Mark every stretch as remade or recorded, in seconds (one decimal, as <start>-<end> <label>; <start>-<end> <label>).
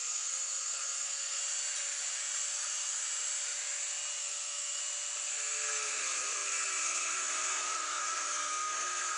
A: 0.0-1.4 remade; 1.4-4.2 recorded; 4.2-4.8 remade; 4.8-5.3 recorded; 5.3-9.2 remade